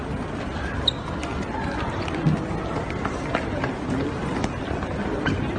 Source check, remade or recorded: recorded